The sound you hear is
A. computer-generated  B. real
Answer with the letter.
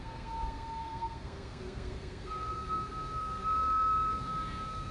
A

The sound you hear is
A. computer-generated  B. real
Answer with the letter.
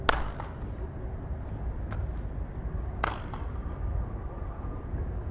B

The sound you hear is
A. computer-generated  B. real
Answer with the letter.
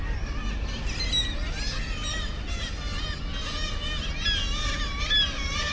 B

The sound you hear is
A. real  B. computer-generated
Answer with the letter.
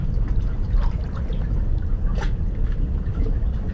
B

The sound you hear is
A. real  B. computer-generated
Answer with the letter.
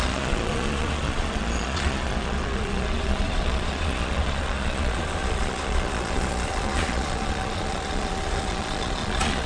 B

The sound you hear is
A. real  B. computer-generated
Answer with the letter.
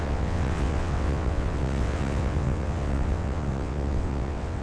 B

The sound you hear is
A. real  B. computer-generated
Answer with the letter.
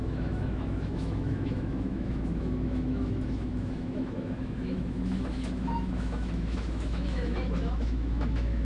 B